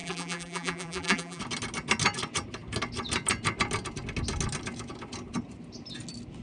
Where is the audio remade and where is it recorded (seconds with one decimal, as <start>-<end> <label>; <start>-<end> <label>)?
0.0-1.4 remade; 1.4-6.4 recorded